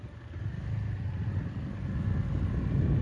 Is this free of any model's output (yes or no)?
yes